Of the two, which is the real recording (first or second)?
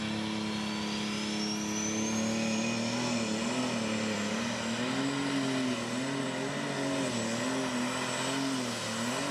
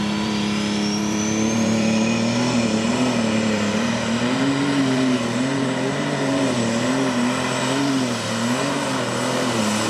first